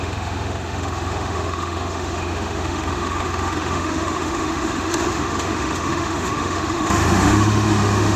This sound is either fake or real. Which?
fake